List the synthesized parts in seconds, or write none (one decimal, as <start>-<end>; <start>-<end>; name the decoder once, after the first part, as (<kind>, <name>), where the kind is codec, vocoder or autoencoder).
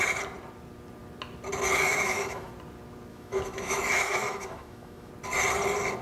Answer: 1.9-2.5 (autoencoder, DAC-VAE); 3.1-5.1